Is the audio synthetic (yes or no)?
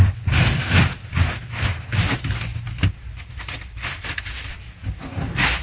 no